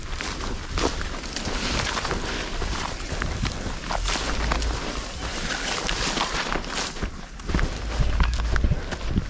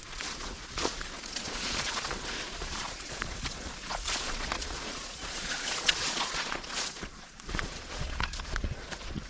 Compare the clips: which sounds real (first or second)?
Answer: first